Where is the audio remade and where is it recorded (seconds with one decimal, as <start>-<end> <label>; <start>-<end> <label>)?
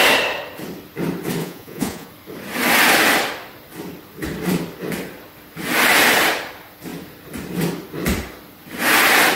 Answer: 0.0-1.4 recorded; 1.4-2.1 remade; 2.1-9.3 recorded